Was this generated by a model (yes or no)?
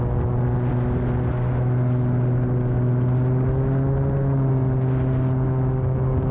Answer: no